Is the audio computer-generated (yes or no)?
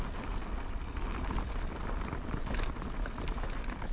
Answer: no